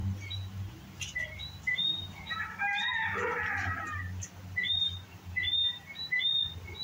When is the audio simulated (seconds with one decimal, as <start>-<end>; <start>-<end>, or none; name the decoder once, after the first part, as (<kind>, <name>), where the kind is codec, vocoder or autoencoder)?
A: none